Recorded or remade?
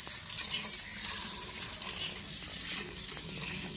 recorded